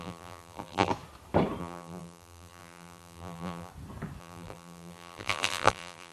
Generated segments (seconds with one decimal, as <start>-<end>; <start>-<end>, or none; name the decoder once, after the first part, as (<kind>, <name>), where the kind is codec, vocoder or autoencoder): 0.0-0.9 (vocoder, BigVGAN v2); 1.6-3.7; 4.2-6.1